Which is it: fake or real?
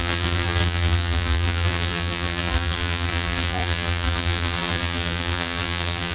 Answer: fake